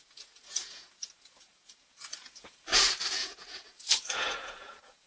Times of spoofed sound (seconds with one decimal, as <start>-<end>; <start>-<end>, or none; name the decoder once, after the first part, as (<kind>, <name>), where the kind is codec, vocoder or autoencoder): 0.0-2.8 (vocoder, Vocos); 3.2-5.1